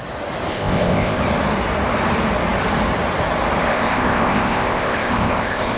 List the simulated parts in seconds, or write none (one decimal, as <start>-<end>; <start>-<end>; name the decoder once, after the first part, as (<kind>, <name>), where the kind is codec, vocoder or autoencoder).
0.5-1.2 (codec, ZipCodec); 3.7-5.8